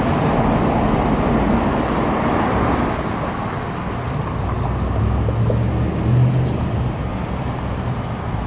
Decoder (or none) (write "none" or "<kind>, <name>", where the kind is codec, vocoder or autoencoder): none